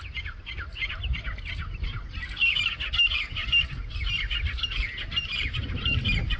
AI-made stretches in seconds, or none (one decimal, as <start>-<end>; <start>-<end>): none